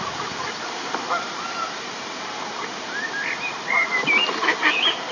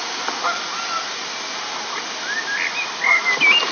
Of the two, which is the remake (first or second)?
first